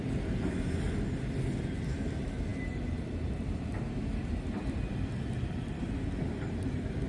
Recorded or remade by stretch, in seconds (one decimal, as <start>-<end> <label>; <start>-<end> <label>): 0.0-7.1 recorded